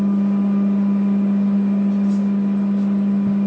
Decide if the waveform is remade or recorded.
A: recorded